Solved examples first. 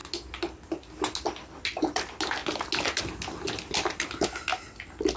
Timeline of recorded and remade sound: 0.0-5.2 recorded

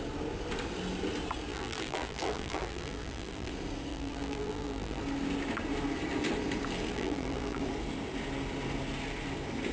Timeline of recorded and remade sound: 0.0-1.5 recorded; 1.5-3.5 remade; 3.5-3.9 recorded; 3.9-5.0 remade; 5.0-6.9 recorded; 6.9-7.6 remade; 7.6-9.7 recorded

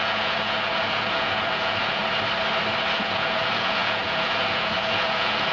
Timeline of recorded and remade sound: 0.0-2.0 remade; 2.0-2.8 recorded; 2.8-5.5 remade